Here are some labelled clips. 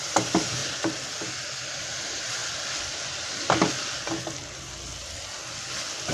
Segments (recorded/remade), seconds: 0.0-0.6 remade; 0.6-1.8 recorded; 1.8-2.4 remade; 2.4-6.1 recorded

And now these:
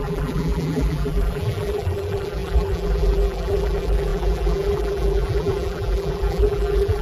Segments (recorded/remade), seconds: 0.0-7.0 remade

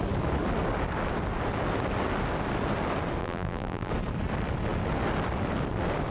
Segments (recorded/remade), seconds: 0.0-3.2 recorded; 3.2-3.9 remade; 3.9-6.1 recorded